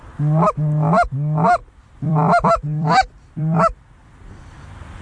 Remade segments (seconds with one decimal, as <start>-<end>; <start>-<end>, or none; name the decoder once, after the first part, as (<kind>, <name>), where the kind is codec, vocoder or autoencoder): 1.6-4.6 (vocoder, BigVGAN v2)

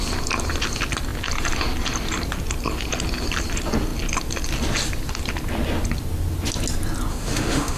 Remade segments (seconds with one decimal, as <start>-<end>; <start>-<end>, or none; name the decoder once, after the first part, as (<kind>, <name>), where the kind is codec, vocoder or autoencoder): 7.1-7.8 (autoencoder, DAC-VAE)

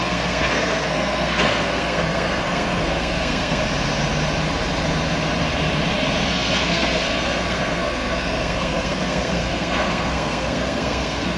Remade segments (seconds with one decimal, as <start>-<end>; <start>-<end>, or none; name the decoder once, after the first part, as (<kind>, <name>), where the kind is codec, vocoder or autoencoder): 0.0-3.6 (codec, SNAC); 6.3-11.4

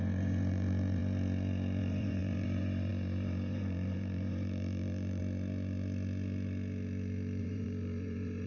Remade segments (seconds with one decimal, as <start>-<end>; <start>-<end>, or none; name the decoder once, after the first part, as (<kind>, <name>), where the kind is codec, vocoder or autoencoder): 0.0-1.0 (vocoder, Vocos); 1.8-5.2; 7.4-8.5